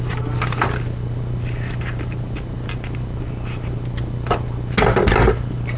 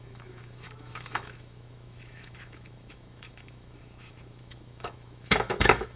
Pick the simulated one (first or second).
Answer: second